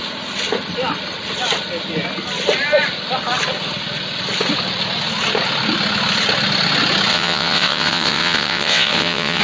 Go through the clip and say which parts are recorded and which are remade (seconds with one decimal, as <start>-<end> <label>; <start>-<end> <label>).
0.0-7.1 recorded; 7.1-9.4 remade